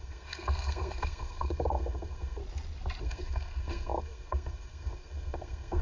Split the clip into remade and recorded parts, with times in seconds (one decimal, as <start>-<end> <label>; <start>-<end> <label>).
0.0-2.4 remade; 2.4-3.0 recorded; 3.0-5.8 remade